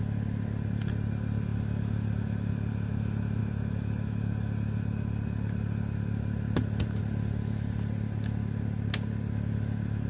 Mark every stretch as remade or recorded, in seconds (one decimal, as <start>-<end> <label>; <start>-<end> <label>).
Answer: 0.0-10.1 recorded